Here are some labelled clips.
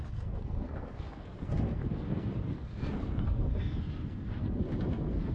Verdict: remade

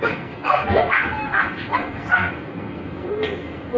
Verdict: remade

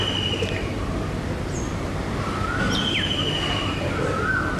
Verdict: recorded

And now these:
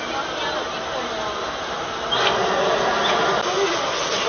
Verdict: recorded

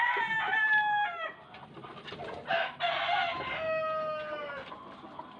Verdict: recorded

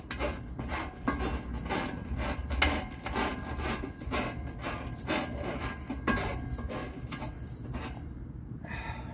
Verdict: recorded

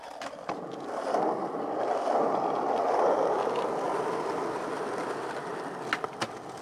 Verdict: recorded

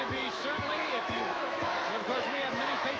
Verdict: remade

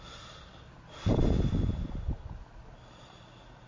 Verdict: recorded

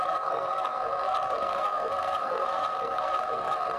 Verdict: remade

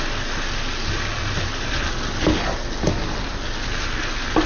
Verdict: recorded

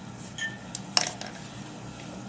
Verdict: recorded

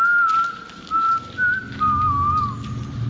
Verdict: recorded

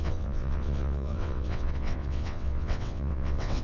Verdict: remade